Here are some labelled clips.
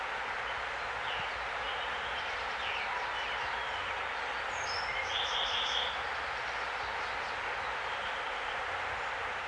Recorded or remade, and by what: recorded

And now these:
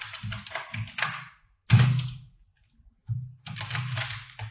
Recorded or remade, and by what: recorded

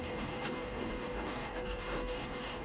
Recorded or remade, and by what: remade, codec, DAC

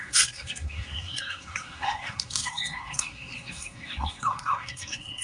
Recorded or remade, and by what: remade, codec, SNAC